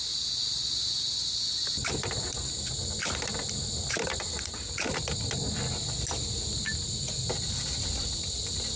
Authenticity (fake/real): real